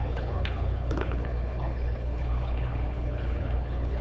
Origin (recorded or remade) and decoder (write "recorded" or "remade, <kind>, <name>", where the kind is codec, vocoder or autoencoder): remade, codec, HILCodec